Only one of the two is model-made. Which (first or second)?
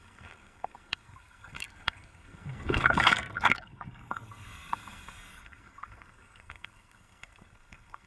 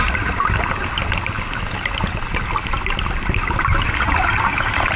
first